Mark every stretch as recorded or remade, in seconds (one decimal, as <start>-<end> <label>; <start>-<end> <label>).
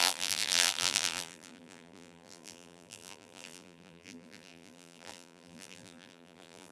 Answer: 0.0-6.7 remade